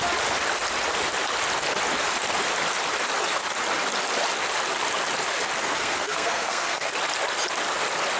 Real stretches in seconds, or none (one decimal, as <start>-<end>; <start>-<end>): 0.0-5.6; 6.9-8.2